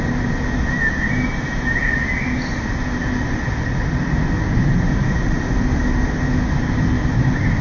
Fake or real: real